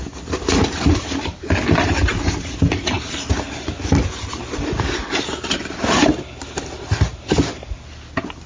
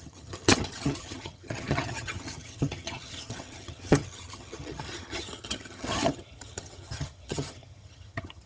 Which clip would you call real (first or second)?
first